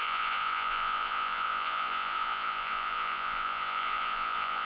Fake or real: fake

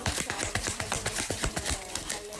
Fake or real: fake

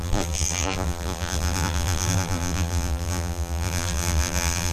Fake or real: fake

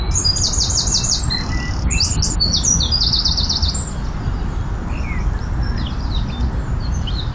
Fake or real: real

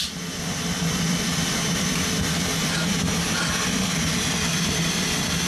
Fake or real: fake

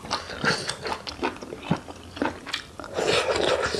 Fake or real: real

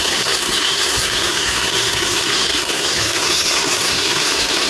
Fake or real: fake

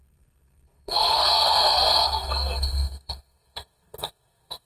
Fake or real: fake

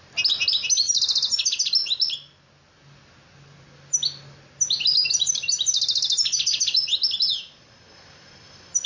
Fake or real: real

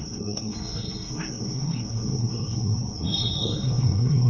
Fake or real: fake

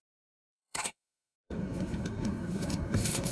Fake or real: fake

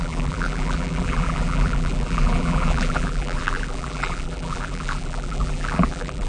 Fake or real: fake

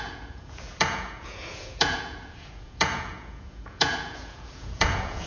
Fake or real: fake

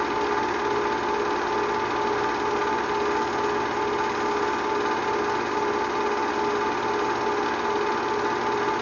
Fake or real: real